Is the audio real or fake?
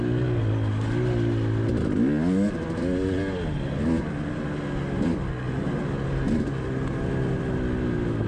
real